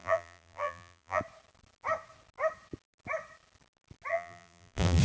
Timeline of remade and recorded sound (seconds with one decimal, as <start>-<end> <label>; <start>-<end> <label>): 0.0-1.2 remade; 1.2-4.1 recorded; 4.1-5.0 remade